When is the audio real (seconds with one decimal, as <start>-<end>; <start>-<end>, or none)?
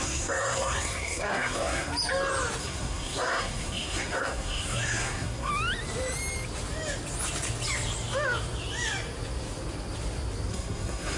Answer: 1.9-2.6; 5.5-10.5